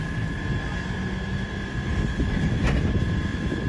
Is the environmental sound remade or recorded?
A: recorded